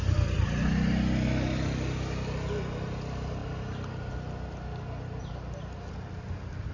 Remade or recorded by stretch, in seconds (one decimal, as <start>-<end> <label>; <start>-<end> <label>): 0.0-6.7 recorded